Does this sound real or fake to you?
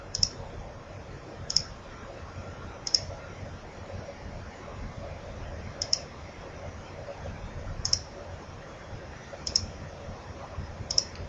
fake